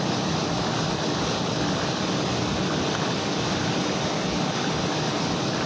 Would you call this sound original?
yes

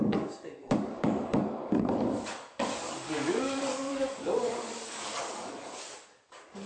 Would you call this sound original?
no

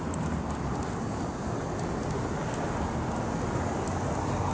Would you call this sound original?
yes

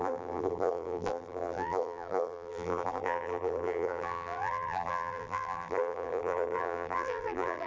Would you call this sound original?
no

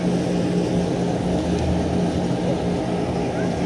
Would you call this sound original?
yes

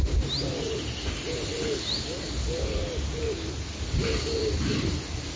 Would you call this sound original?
yes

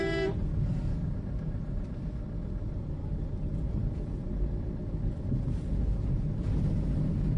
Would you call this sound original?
yes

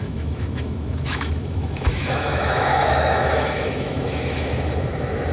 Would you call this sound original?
no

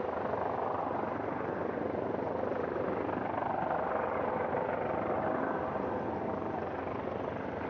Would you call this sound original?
yes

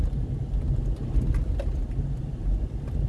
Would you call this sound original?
yes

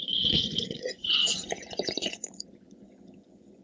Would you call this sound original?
no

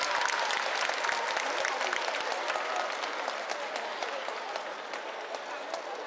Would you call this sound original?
yes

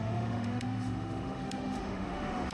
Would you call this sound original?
no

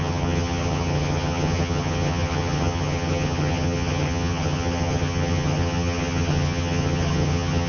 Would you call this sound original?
no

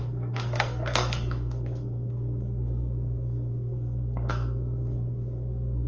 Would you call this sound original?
no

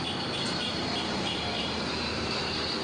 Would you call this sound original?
no